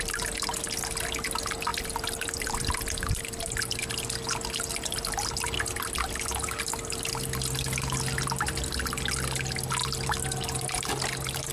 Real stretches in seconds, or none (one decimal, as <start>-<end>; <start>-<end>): 0.0-1.7; 3.2-11.5